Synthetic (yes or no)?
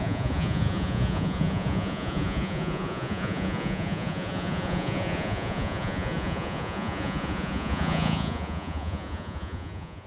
yes